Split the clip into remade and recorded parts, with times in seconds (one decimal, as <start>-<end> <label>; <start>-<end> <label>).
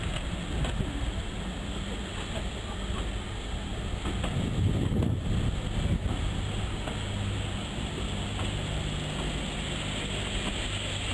0.0-11.1 recorded